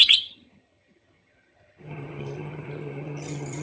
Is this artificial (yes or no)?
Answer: yes